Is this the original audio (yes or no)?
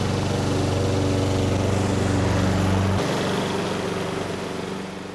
yes